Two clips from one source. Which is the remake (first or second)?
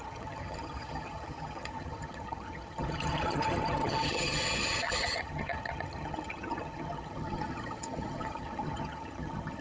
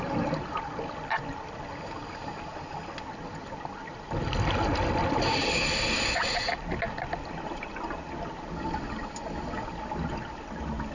first